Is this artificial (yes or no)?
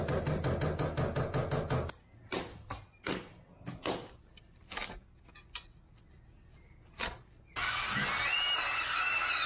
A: no